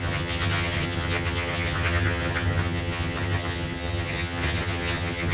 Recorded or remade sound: remade